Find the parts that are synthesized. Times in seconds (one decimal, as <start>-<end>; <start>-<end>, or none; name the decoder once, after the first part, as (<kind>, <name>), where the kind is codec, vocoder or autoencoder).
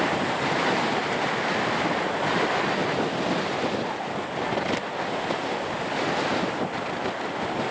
none